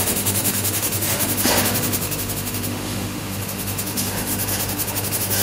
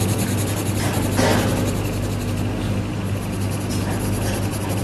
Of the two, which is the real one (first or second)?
second